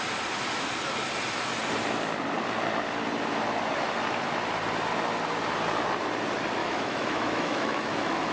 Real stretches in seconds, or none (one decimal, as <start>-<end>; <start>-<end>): 0.0-6.6